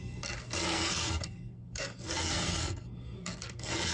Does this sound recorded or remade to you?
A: remade